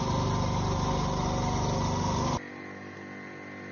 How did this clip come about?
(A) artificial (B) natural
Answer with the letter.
B